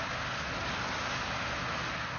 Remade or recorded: recorded